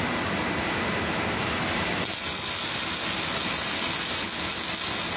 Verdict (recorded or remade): recorded